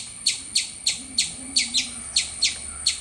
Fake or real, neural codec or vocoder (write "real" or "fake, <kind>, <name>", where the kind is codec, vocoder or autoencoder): real